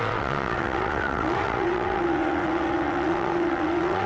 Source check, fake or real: fake